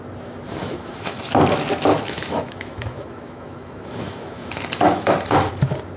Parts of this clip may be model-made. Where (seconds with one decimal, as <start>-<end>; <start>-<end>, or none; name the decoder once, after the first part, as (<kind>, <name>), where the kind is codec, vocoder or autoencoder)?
0.6-1.3 (autoencoder, DAC-VAE); 1.9-5.5